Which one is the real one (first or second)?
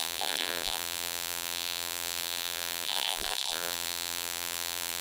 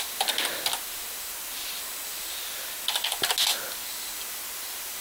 second